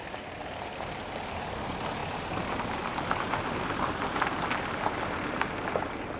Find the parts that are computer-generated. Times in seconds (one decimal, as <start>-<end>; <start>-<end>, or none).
none